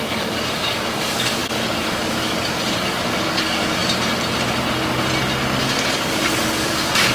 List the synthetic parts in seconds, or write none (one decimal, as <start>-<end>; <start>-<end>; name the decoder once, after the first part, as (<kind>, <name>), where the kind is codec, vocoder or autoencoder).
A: 0.0-3.8 (codec, DAC); 5.6-7.1